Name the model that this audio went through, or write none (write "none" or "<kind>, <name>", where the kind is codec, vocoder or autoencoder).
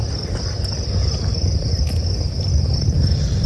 none